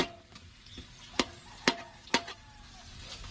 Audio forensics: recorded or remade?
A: recorded